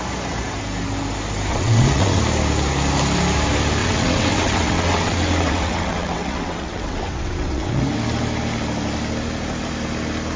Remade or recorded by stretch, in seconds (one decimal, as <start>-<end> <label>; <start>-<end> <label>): 0.0-1.5 recorded; 1.5-2.2 remade; 2.2-3.8 recorded; 3.8-7.8 remade; 7.8-10.4 recorded